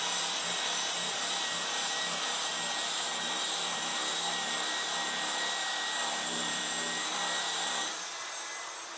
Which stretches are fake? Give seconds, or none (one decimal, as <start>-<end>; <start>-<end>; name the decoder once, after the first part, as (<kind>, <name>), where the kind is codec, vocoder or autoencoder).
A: 0.0-2.5 (vocoder, BigVGAN v2); 3.3-9.0